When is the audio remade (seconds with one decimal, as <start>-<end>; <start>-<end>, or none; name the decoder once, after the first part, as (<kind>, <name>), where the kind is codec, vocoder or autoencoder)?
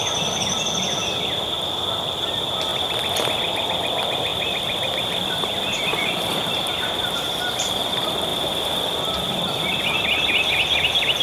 4.3-7.9 (vocoder, BigVGAN v2); 8.3-8.8